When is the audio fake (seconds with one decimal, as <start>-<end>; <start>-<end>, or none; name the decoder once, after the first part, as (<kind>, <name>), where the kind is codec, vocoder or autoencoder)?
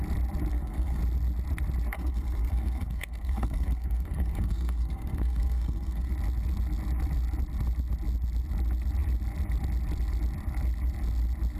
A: 0.5-1.0 (codec, SNAC); 1.9-6.1